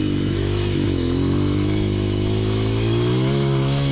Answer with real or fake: fake